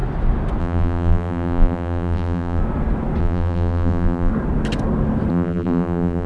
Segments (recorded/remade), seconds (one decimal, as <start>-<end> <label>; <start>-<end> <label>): 0.0-0.6 recorded; 0.6-2.6 remade; 2.6-3.2 recorded; 3.2-4.3 remade; 4.3-5.3 recorded; 5.3-6.3 remade